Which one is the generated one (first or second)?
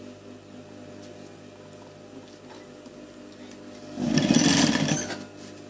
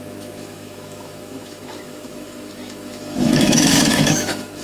second